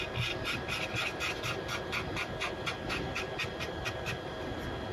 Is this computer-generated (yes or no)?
no